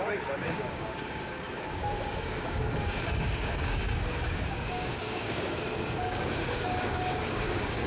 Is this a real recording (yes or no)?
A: no